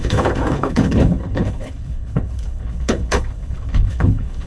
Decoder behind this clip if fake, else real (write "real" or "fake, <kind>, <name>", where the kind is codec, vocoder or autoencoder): fake, codec, HILCodec